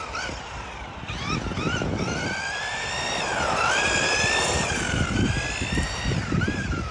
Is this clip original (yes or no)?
yes